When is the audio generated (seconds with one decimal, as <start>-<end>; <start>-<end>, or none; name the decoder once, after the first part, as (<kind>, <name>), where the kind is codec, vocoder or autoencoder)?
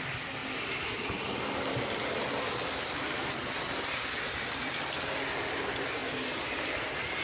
none